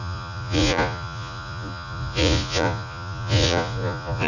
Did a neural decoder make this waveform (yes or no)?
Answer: yes